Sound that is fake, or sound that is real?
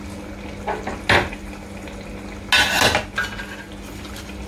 real